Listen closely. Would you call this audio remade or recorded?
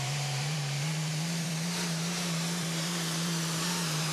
remade